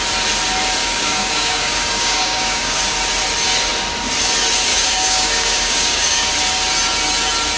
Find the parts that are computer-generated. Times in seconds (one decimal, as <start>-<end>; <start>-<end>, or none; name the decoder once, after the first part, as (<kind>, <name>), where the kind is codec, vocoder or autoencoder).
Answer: 0.8-2.8 (codec, DAC); 4.7-6.3